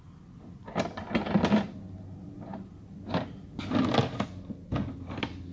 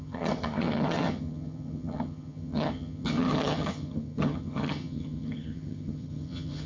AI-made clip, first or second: second